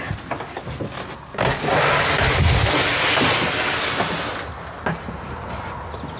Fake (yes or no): no